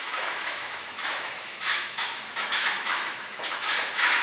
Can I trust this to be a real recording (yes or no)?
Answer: no